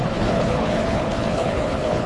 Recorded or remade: remade